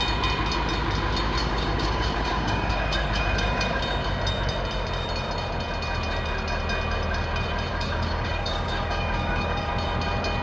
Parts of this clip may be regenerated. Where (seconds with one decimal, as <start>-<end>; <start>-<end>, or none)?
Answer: 1.4-3.8; 7.7-9.7